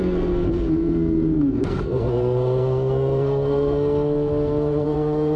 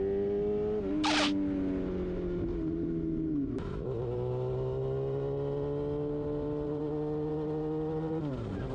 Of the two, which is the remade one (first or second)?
first